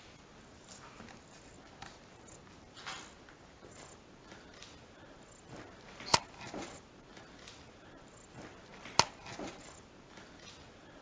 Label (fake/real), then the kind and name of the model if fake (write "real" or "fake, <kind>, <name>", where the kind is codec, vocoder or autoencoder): real